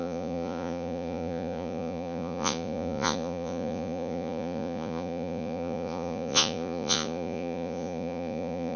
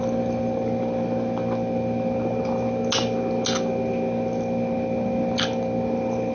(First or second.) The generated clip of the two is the first